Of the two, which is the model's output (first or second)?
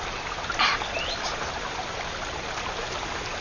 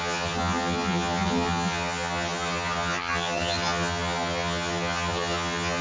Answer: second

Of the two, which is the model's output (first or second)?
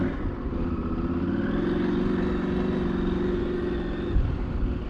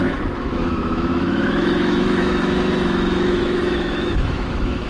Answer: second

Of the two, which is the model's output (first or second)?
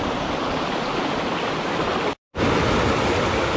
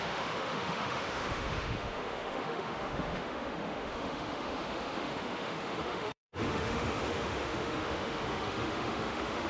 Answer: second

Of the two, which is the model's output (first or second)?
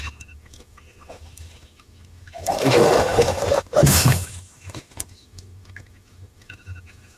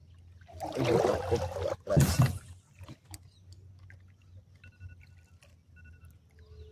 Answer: first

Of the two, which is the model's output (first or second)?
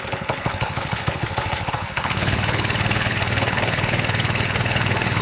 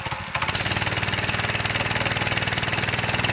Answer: first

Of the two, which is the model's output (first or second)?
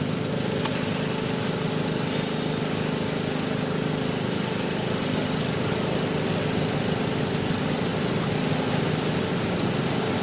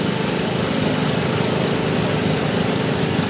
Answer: second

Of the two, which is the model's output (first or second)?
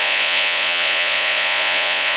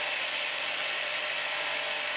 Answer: first